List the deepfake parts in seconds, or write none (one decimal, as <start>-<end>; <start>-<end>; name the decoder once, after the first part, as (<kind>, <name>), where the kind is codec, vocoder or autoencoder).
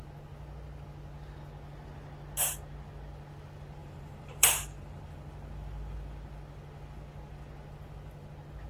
3.8-5.0 (vocoder, BigVGAN v2)